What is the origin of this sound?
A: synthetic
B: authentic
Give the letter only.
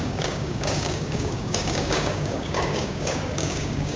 A